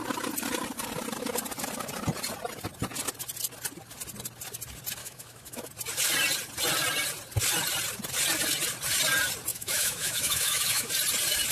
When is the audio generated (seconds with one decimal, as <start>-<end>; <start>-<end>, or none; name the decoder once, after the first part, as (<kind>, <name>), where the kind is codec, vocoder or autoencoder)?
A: 5.0-5.7 (autoencoder, DAC-VAE); 9.5-10.9